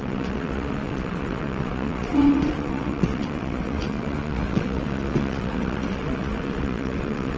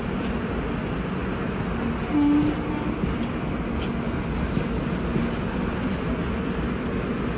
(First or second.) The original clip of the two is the second